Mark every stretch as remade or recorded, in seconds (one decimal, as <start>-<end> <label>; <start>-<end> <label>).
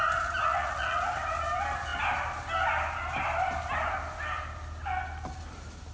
0.0-0.4 recorded; 0.4-1.1 remade; 1.1-5.9 recorded